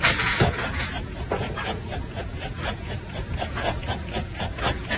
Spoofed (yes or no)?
yes